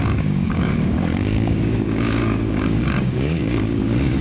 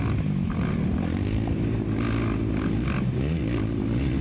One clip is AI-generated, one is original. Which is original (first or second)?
second